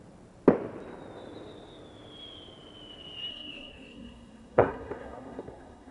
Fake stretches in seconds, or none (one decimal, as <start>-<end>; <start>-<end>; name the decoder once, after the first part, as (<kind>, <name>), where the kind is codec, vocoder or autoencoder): 3.3-5.9 (codec, SNAC)